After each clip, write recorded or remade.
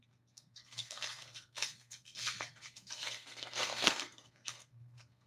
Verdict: remade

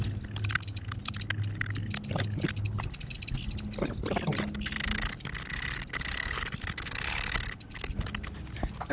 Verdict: recorded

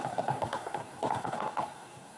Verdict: remade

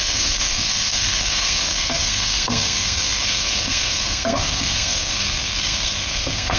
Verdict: remade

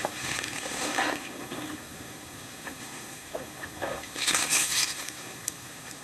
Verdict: remade